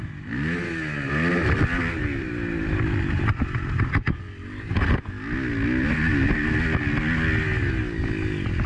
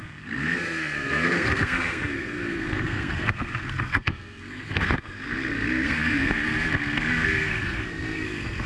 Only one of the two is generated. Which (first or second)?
second